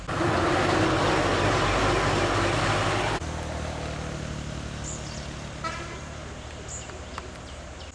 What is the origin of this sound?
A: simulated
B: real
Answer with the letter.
B